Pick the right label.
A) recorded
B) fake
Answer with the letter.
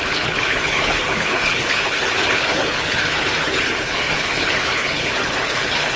B